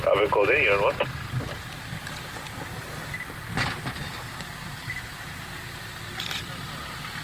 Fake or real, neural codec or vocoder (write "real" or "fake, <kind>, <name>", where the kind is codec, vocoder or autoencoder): real